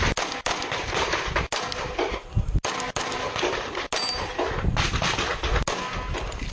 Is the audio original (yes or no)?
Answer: yes